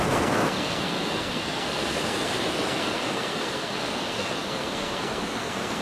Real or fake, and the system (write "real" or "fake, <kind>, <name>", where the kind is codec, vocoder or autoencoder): fake, codec, SNAC